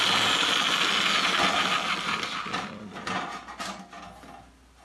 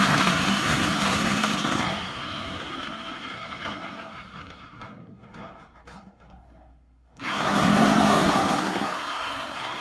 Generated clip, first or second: second